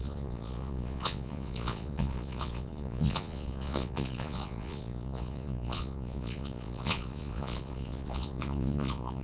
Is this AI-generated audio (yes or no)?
yes